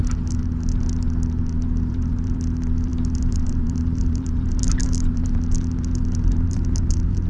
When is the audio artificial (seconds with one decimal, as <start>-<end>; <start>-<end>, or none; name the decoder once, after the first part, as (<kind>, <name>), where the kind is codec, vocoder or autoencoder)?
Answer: 1.9-7.3 (vocoder, BigVGAN v2)